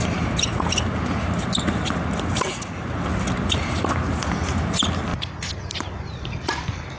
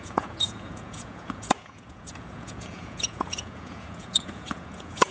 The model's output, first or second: second